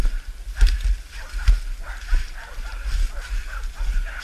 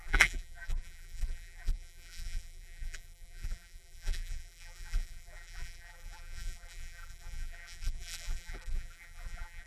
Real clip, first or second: first